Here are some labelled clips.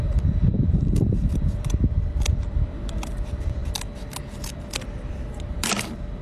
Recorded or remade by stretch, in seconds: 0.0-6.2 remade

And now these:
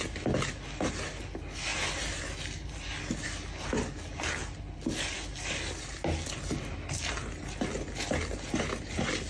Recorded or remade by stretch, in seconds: 0.0-9.3 recorded

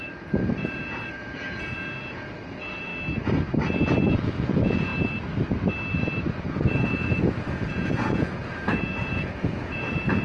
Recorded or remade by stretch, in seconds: 0.0-2.9 remade; 2.9-4.1 recorded; 4.1-4.9 remade; 4.9-6.4 recorded; 6.4-10.2 remade

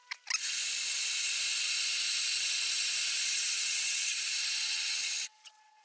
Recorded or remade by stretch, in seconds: 0.0-3.5 recorded; 3.5-4.0 remade; 4.0-4.7 recorded; 4.7-5.8 remade

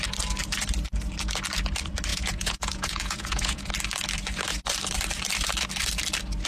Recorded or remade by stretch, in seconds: 0.0-2.1 recorded; 2.1-3.7 remade; 3.7-6.5 recorded

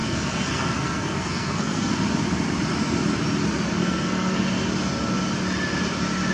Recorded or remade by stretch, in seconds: 0.0-1.9 remade; 1.9-3.8 recorded; 3.8-4.4 remade; 4.4-6.3 recorded